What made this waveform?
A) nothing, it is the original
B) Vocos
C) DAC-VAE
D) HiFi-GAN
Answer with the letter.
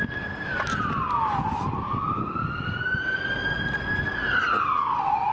A